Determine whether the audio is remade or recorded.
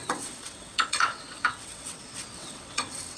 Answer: remade